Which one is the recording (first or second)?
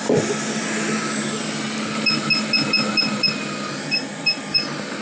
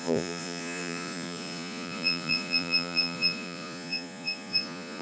first